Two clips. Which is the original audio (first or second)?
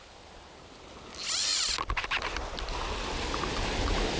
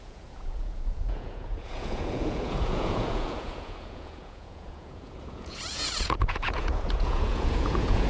first